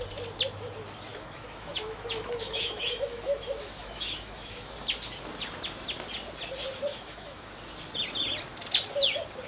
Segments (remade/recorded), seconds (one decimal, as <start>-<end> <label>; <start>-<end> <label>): 0.0-1.1 recorded; 1.1-4.7 remade; 4.7-6.9 recorded; 6.9-7.5 remade; 7.5-9.5 recorded